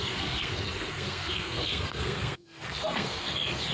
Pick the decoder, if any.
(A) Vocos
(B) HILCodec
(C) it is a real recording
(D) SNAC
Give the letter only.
D